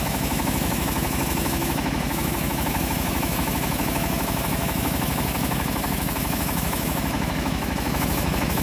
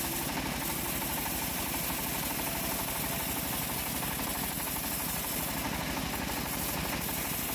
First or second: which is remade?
first